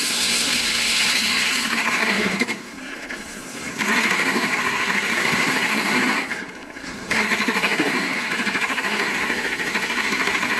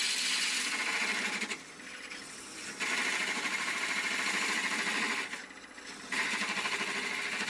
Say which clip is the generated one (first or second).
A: first